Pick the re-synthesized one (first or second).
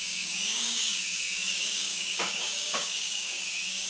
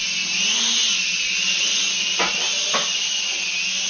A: first